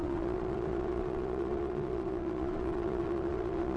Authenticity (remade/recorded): remade